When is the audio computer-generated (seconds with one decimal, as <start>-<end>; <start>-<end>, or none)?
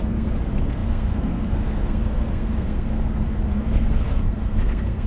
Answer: 0.0-5.1